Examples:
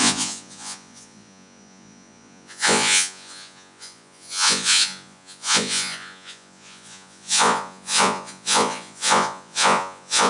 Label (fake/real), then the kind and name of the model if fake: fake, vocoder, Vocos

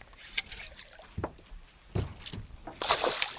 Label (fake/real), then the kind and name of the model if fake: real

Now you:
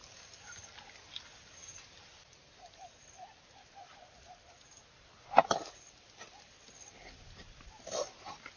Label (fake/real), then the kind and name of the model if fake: real